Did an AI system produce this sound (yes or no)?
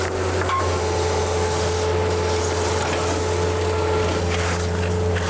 no